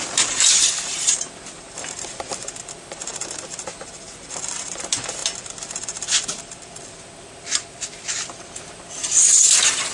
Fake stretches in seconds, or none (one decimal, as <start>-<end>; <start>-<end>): 0.0-9.9